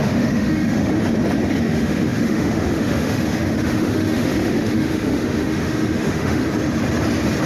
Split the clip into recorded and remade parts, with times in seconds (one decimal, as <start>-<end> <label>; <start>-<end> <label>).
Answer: 0.0-0.9 remade; 0.9-1.6 recorded; 1.6-6.4 remade; 6.4-7.5 recorded